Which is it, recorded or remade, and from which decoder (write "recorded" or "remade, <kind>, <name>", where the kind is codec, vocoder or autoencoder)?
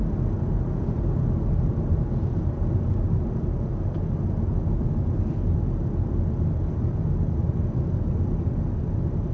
recorded